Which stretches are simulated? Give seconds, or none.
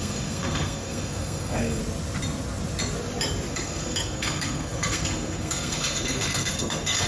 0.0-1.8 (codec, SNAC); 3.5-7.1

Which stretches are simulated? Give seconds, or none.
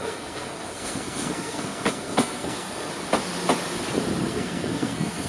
0.0-2.9 (codec, SNAC); 4.2-5.3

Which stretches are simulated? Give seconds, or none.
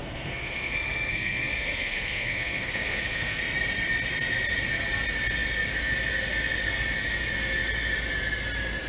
0.0-3.4 (codec, SNAC)